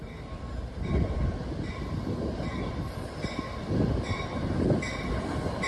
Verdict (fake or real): real